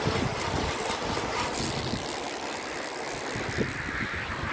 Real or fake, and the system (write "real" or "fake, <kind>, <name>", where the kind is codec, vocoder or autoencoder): real